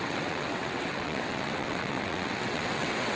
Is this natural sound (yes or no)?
no